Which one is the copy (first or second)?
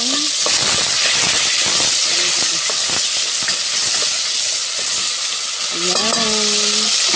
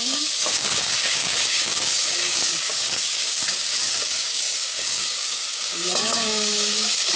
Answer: second